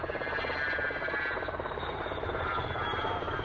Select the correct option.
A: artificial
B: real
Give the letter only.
A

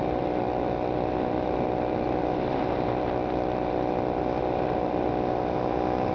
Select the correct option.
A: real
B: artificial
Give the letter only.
A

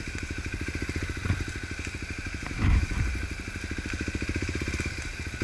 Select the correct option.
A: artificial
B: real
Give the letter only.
B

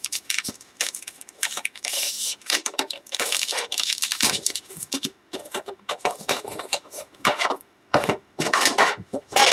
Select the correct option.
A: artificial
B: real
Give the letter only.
A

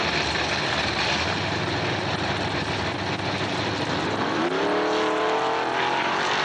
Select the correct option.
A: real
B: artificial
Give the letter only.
A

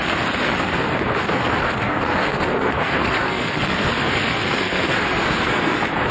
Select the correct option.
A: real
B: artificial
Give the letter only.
B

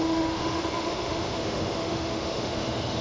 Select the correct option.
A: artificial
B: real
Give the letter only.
A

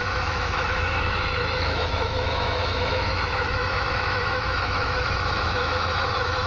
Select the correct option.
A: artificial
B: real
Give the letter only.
A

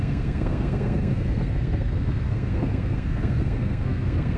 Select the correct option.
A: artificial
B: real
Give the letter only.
A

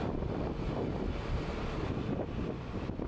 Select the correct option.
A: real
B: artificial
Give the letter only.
A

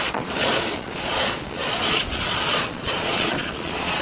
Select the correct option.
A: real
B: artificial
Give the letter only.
B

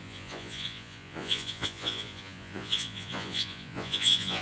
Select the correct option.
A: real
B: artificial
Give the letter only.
B